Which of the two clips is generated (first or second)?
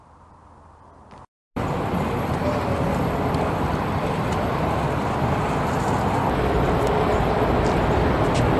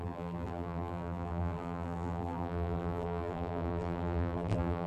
second